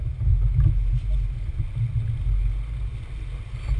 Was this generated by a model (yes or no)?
no